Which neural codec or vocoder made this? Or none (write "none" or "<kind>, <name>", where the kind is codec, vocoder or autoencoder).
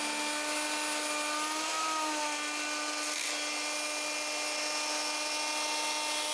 none